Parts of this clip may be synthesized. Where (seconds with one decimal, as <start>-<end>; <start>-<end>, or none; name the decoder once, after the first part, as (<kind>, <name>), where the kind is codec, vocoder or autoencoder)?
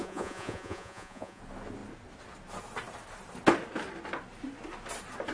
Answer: 0.0-1.4 (vocoder, Vocos)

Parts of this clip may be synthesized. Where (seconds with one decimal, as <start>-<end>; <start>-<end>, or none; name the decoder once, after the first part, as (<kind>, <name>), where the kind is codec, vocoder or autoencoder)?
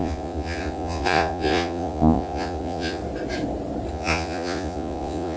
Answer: 0.0-3.0 (vocoder, Vocos); 3.9-5.4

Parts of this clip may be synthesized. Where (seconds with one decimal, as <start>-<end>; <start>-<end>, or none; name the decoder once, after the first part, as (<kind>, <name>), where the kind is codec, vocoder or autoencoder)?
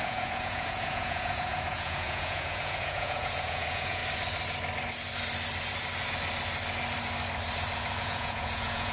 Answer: 0.0-4.0 (vocoder, Vocos); 8.0-8.9